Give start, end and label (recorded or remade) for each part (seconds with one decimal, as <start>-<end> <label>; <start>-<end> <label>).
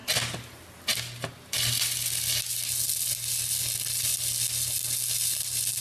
0.0-5.8 recorded